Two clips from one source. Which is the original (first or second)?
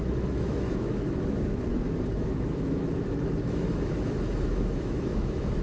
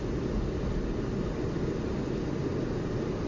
second